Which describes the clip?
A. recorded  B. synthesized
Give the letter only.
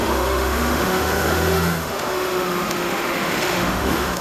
B